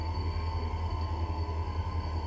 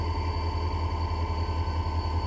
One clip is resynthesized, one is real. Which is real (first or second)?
second